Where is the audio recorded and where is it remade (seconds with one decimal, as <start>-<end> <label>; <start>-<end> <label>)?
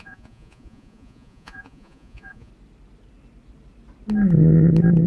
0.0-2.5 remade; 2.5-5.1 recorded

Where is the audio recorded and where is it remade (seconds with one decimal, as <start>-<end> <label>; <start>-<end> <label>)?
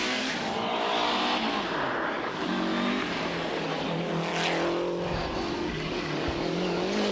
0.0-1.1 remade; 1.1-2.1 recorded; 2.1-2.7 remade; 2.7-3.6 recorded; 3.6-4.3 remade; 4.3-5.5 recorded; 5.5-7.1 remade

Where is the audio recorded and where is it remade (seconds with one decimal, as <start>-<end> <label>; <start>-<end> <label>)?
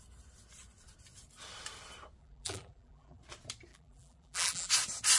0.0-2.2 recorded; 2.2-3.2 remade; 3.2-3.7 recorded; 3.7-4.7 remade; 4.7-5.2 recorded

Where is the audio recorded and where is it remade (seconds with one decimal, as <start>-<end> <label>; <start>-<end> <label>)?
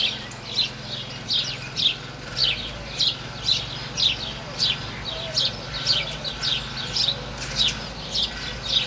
0.0-8.9 recorded